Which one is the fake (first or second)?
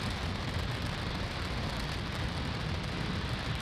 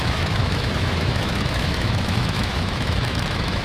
second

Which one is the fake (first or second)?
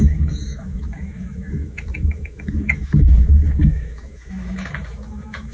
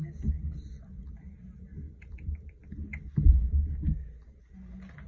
first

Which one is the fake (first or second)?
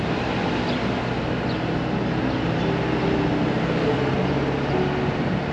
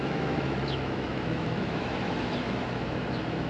second